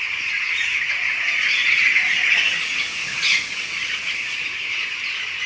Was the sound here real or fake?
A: fake